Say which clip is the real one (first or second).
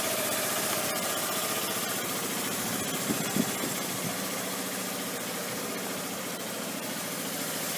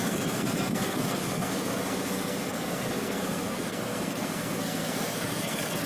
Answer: first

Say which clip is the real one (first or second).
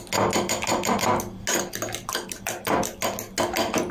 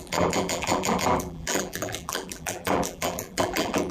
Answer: first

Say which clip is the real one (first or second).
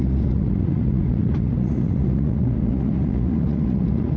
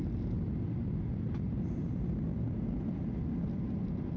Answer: second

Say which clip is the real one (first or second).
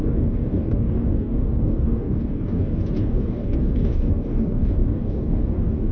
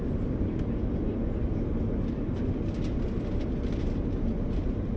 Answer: second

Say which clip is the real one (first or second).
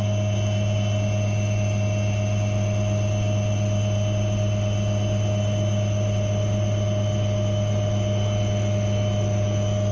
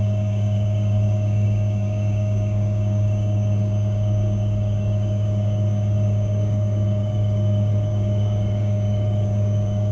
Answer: first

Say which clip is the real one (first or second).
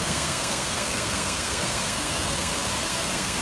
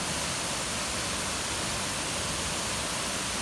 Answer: second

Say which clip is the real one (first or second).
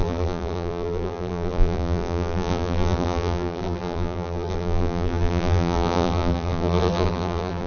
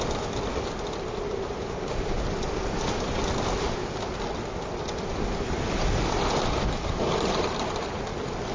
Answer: second